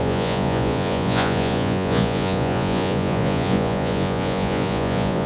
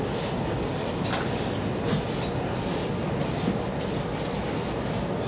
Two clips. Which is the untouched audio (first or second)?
second